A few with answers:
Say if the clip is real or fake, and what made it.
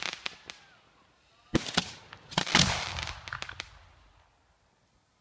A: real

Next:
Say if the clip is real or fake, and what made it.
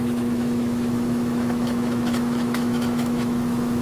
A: fake, autoencoder, DAC-VAE